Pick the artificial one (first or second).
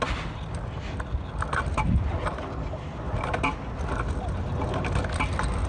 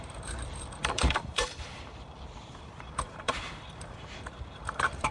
second